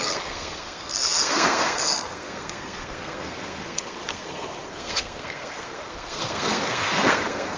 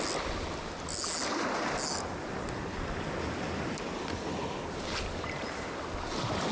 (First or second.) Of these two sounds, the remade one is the first